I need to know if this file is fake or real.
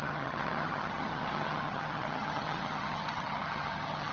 fake